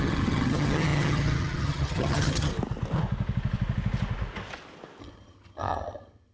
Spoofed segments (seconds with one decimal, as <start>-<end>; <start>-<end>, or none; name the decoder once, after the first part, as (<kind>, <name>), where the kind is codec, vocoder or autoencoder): 0.0-2.5 (vocoder, HiFi-GAN); 5.0-6.3